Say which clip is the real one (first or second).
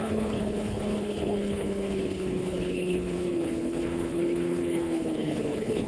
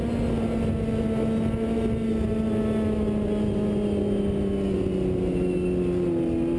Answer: second